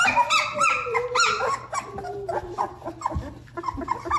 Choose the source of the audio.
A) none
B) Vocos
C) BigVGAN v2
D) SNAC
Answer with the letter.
C